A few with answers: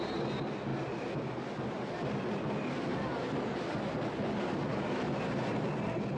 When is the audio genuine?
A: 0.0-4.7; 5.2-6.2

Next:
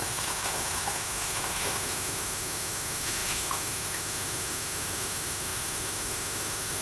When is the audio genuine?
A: none

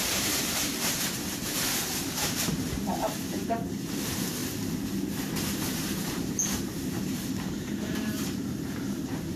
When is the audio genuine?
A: 4.4-5.5

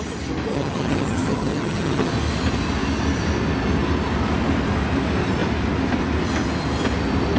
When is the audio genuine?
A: 0.0-0.5; 2.1-7.4